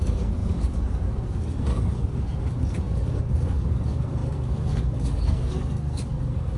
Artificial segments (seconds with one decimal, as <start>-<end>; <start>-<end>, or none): 0.0-6.6